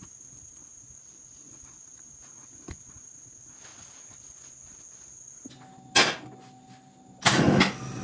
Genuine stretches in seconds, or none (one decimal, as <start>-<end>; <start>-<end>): 0.0-8.0